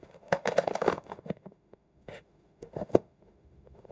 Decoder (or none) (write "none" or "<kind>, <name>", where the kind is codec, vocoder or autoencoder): autoencoder, DAC-VAE